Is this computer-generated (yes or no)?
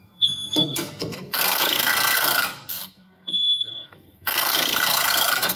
yes